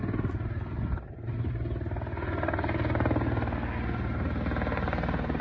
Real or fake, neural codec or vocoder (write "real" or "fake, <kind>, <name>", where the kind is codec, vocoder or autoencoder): real